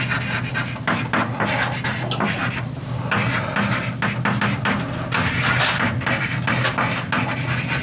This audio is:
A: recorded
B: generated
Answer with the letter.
A